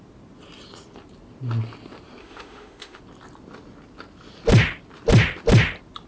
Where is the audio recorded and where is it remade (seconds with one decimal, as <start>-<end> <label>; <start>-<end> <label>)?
0.0-2.2 recorded; 2.2-3.0 remade; 3.0-6.1 recorded